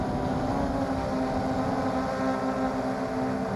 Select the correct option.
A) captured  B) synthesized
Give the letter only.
A